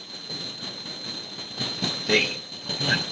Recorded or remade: recorded